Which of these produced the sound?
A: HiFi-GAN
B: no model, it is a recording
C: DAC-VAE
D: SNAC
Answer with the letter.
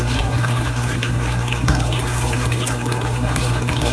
D